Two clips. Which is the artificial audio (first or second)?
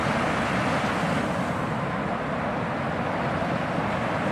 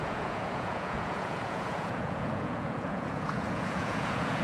second